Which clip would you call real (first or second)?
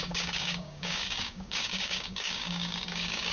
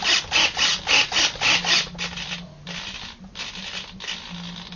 second